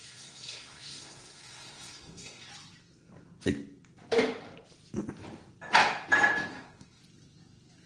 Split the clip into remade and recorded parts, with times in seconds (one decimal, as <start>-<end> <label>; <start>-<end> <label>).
0.0-2.5 remade; 2.5-6.5 recorded; 6.5-7.0 remade; 7.0-7.9 recorded